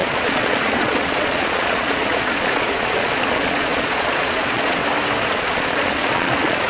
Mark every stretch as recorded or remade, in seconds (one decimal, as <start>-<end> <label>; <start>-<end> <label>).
0.0-4.8 remade; 4.8-5.3 recorded; 5.3-6.7 remade